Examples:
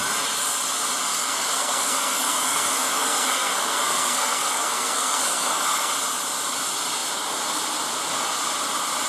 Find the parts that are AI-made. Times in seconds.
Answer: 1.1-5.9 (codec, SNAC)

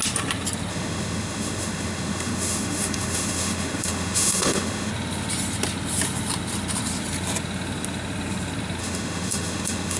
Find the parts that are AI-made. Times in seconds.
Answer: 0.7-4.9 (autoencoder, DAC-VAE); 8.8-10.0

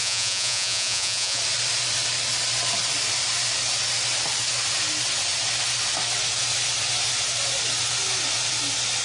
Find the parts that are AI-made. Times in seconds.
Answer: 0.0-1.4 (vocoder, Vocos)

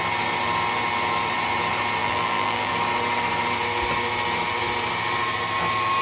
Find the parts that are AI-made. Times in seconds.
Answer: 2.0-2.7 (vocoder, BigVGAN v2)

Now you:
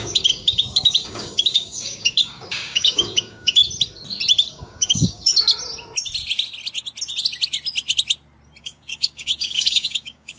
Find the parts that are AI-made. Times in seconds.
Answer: 0.0-3.6 (codec, DAC); 4.5-5.3; 8.6-10.4